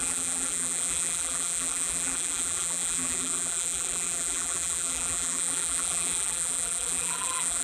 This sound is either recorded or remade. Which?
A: remade